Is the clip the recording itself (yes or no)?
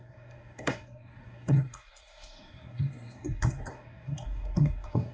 no